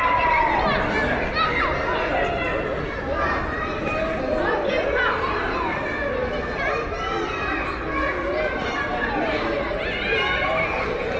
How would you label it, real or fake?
real